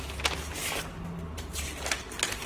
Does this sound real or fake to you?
real